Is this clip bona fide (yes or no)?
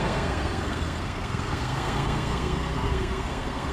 no